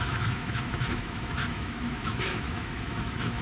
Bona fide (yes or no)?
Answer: no